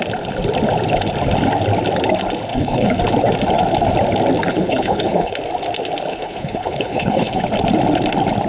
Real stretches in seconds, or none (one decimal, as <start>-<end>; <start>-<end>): 0.0-2.5; 3.0-4.5; 5.4-6.1; 7.4-8.5